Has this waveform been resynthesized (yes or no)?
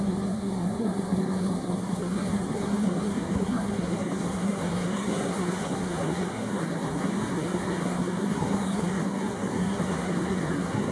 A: yes